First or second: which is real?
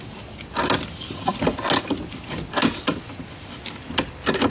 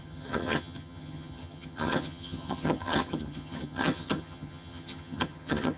first